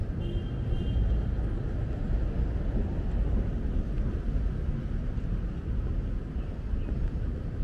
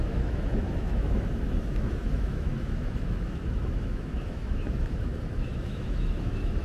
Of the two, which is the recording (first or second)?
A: first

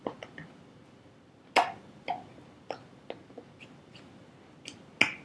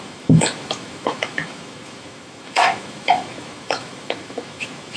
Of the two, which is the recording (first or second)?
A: first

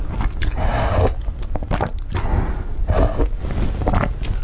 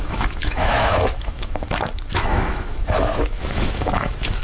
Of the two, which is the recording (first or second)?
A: first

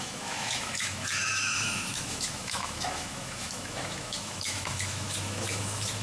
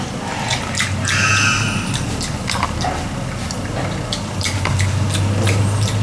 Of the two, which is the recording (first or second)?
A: second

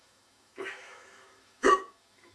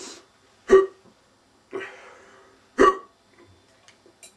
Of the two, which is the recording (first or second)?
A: second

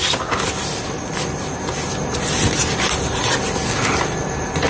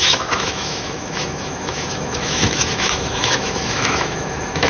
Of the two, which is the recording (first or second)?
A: first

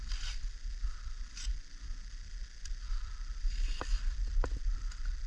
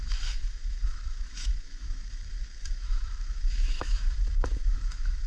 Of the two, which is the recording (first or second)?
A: first